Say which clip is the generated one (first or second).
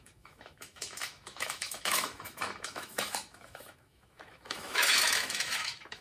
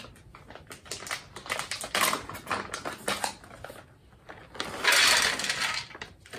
first